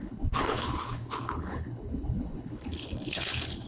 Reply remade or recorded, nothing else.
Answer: remade